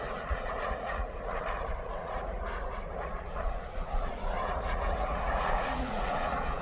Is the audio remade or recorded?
remade